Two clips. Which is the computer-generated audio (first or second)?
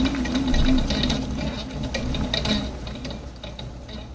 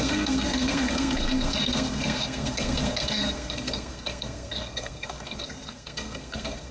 second